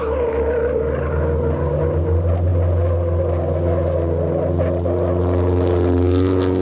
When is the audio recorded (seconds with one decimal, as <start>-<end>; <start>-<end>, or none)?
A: 0.0-6.6